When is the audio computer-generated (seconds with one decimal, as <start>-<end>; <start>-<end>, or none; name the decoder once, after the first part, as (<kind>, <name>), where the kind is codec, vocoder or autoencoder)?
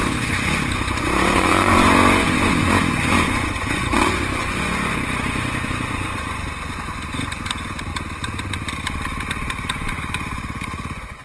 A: 0.0-7.9 (vocoder, Vocos); 9.3-11.2